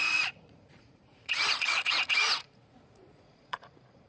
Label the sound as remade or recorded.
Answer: remade